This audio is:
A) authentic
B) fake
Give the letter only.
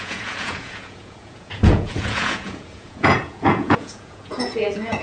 B